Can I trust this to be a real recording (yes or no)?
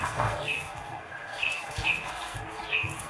no